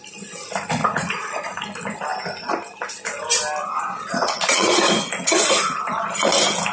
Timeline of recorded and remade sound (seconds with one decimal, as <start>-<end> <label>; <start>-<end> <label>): 0.0-0.8 recorded; 0.8-1.6 remade; 1.6-3.6 recorded; 3.6-6.0 remade; 6.0-6.7 recorded